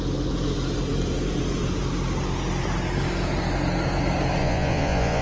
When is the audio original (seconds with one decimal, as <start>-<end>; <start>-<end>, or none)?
0.0-4.4